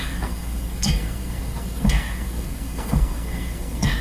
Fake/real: fake